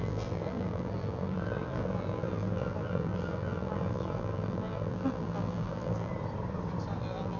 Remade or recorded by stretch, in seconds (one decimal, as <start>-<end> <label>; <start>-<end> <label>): 0.0-6.1 remade; 6.1-7.0 recorded; 7.0-7.4 remade